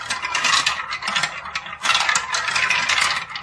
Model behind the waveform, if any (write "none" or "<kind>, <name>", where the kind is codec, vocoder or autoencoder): none